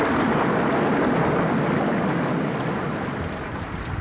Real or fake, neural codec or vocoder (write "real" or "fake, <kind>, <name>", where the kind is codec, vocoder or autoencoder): fake, vocoder, BigVGAN v2